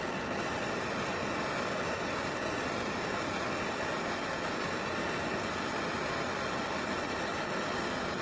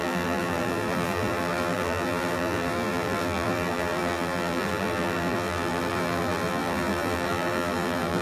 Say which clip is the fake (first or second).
second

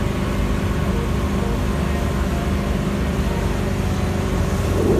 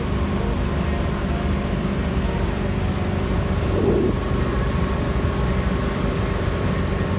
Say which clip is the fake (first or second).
second